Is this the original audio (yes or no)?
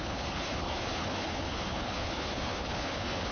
no